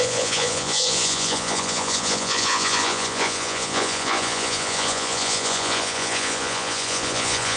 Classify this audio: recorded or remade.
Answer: remade